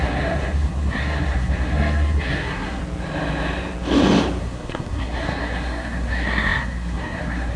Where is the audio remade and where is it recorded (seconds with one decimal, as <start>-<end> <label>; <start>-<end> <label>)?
0.0-2.8 remade; 2.8-4.4 recorded; 4.4-7.6 remade